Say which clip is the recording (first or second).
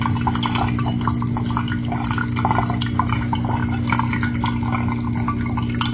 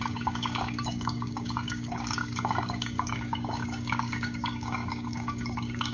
first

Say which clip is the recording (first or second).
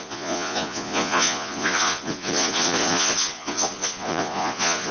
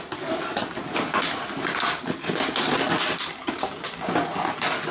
second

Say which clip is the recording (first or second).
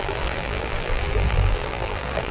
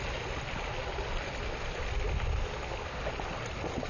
second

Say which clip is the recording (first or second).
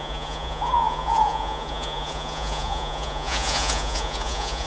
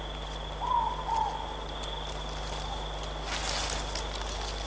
second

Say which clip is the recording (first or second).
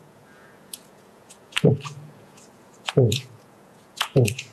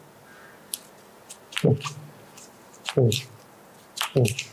second